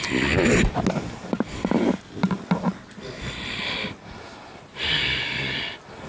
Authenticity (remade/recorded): recorded